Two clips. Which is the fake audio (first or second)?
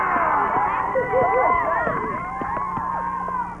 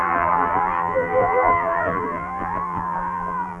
second